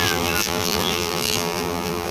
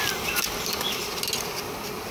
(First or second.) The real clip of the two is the second